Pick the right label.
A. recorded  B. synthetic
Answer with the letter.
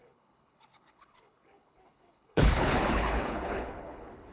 B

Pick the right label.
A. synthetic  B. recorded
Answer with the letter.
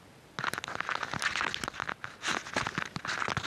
B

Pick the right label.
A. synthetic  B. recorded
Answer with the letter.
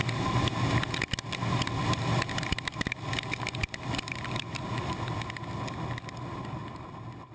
B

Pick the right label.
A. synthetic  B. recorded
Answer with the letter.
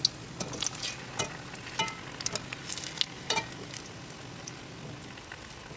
B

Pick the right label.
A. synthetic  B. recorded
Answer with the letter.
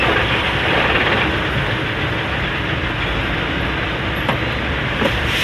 B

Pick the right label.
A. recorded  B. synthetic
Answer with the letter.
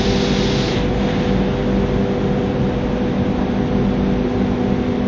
A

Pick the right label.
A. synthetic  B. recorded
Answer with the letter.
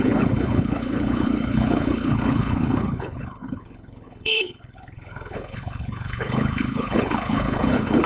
A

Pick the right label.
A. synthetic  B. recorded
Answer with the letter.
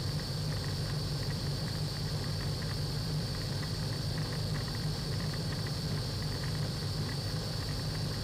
A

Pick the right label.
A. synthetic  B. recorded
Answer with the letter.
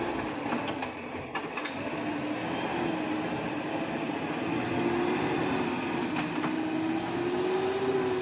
B